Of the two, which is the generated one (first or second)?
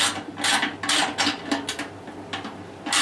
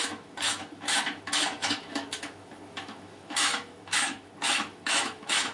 second